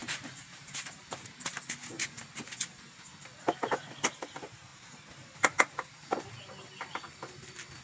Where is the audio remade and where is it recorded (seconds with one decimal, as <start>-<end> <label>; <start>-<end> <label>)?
0.0-0.7 remade; 0.7-4.7 recorded; 4.7-6.3 remade; 6.3-7.8 recorded